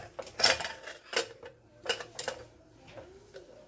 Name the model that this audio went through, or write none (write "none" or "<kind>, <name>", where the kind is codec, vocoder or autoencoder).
none